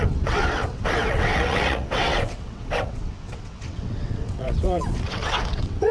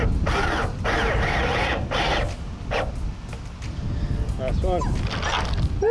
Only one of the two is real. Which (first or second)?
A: second